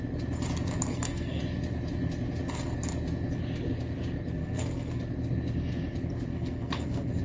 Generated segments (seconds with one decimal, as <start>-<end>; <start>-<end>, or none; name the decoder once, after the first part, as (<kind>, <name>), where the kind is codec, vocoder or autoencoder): 0.9-1.4 (codec, SNAC); 4.4-5.0; 6.3-7.2